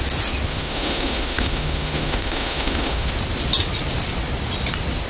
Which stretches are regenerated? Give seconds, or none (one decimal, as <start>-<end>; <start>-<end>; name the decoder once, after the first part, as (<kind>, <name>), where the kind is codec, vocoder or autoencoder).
0.5-3.1 (autoencoder, DAC-VAE)